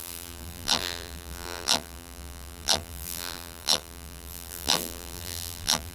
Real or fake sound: fake